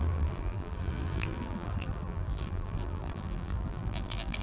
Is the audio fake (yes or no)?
yes